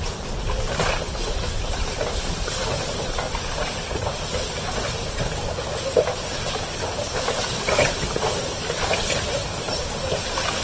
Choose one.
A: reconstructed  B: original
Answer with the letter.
A